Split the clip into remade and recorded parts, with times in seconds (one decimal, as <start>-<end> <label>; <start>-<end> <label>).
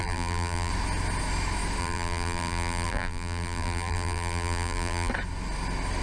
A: 0.0-0.7 remade; 0.7-1.8 recorded; 1.8-5.1 remade; 5.1-6.0 recorded